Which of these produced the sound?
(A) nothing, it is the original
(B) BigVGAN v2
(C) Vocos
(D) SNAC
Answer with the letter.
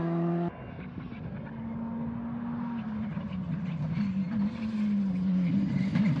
A